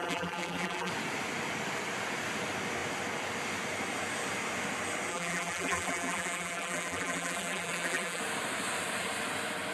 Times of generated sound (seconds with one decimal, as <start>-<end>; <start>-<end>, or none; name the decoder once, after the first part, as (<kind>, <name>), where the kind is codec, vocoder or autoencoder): 0.0-0.9 (vocoder, BigVGAN v2); 5.1-8.2